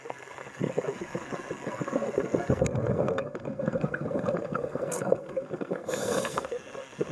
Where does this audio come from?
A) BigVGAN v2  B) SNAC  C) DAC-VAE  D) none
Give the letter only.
B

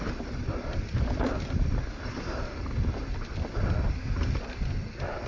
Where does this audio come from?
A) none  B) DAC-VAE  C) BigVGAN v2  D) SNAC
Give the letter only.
A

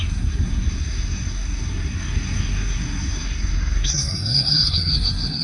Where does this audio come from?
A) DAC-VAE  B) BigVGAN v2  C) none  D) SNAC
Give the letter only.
D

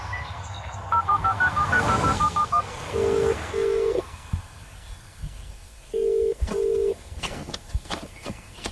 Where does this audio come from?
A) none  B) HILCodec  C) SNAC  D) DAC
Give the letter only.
C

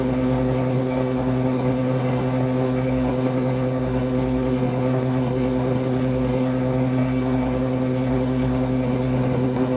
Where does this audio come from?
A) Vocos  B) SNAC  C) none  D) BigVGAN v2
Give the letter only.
B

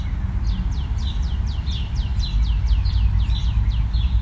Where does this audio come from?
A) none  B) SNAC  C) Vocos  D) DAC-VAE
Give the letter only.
A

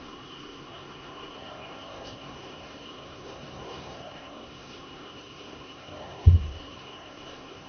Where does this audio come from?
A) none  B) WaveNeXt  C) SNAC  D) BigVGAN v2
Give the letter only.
C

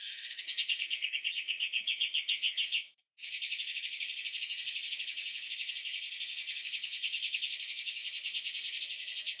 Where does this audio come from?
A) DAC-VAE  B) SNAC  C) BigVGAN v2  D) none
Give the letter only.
B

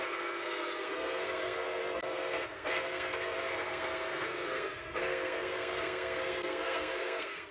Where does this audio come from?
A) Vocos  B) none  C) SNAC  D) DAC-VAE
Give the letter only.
C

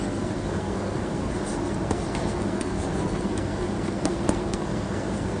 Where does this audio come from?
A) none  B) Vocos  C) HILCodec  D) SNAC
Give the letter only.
D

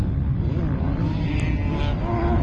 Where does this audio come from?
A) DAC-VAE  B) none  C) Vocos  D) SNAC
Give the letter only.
B